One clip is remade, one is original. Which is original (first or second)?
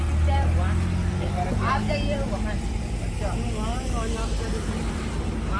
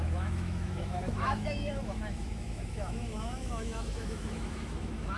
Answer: first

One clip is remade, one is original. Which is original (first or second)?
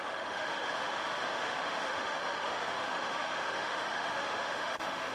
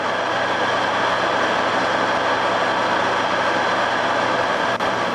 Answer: second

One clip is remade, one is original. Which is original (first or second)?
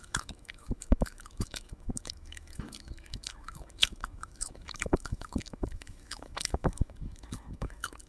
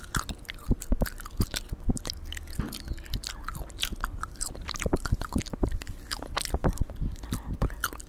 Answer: second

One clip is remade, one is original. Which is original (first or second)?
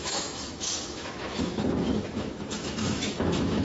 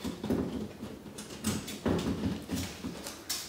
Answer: second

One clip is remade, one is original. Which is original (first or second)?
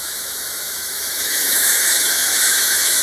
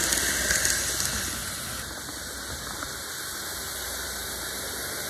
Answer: second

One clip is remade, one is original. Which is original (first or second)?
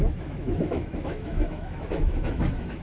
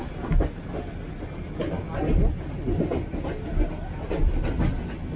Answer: second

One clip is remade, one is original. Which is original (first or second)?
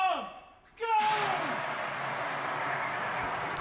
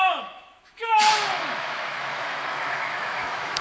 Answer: first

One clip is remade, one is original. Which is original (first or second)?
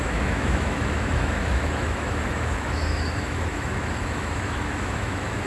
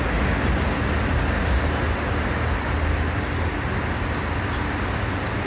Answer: second